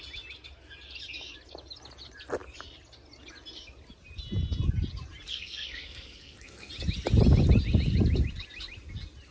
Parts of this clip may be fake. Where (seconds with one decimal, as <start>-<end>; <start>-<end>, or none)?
5.3-6.7